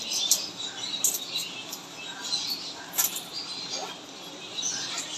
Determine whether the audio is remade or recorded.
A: recorded